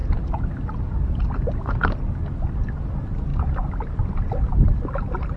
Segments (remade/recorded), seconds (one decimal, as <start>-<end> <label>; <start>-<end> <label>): 0.0-5.4 recorded